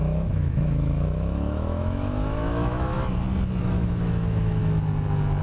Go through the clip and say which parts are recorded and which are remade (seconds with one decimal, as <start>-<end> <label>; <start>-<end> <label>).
0.0-2.9 remade; 2.9-3.6 recorded; 3.6-4.6 remade; 4.6-5.4 recorded